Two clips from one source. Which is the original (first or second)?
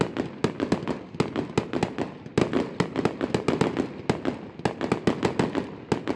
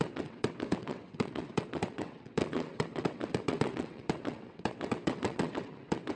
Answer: first